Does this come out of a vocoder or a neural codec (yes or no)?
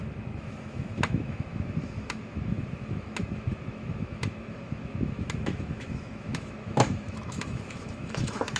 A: yes